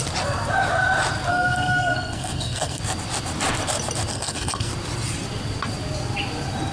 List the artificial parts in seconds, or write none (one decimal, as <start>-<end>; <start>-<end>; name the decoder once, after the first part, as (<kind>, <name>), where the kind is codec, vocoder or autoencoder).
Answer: 1.3-2.8 (codec, SNAC); 4.1-4.7